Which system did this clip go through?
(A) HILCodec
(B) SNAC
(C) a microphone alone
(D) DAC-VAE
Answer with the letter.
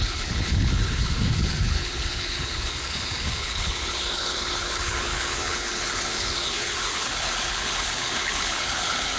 A